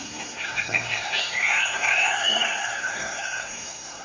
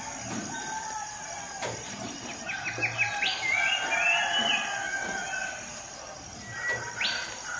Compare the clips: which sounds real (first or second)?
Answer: second